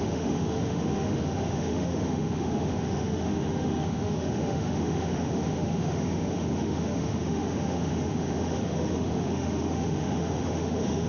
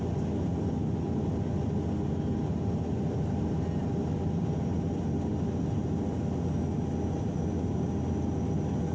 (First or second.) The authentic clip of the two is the second